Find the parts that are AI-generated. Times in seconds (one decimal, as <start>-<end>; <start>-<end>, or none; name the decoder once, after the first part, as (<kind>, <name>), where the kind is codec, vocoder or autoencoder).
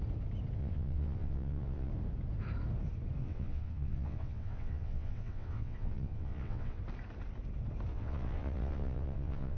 0.6-1.9 (vocoder, WaveNeXt); 3.2-6.8; 7.9-9.6